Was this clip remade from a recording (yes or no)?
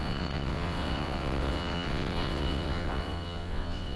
yes